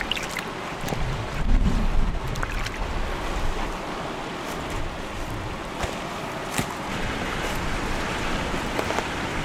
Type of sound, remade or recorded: recorded